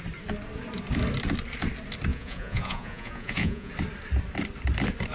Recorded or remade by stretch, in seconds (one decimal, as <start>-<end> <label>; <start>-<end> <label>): 0.0-2.1 recorded; 2.1-3.7 remade; 3.7-5.1 recorded